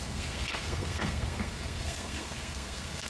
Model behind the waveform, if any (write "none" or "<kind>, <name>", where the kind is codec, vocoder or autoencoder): codec, SNAC